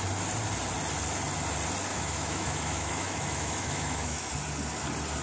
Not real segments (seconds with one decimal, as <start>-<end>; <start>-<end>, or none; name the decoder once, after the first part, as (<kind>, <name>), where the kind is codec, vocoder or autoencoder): 1.9-4.3 (autoencoder, DAC-VAE)